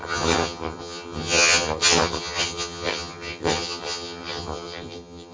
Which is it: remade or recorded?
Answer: remade